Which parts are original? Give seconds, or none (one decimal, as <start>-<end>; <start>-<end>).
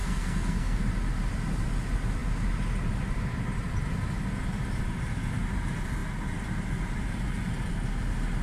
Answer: 0.8-8.4